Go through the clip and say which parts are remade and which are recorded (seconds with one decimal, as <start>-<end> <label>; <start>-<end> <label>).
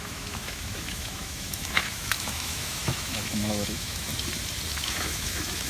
0.0-4.1 remade; 4.1-4.7 recorded; 4.7-5.7 remade